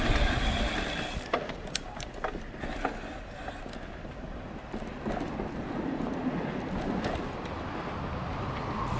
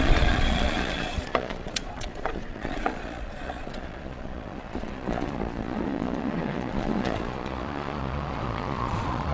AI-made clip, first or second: second